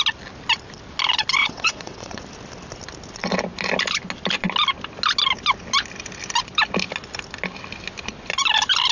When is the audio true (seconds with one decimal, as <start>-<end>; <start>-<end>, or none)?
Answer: 0.0-1.4; 2.2-8.9

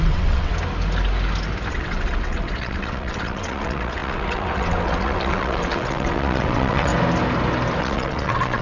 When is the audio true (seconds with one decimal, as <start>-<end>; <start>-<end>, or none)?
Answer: 0.5-1.7; 6.9-7.8

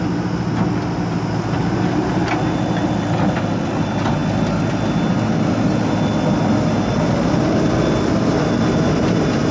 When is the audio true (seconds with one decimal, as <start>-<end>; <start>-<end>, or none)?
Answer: 0.0-9.5

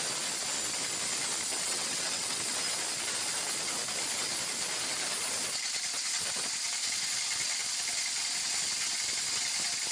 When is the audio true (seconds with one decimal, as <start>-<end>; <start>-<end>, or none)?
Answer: 0.0-1.5; 2.4-9.9

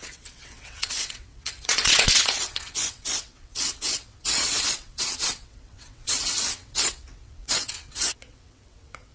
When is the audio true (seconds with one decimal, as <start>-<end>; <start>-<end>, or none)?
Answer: none

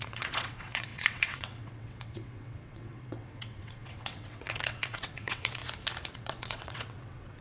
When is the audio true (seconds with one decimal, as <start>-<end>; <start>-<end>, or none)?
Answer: 5.6-6.1

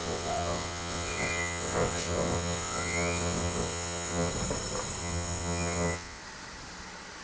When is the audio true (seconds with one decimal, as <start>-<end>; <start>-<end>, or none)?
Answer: 4.3-5.0; 6.2-7.2

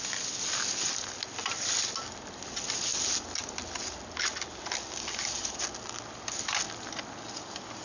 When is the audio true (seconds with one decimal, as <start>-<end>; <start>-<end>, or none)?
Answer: 0.0-7.8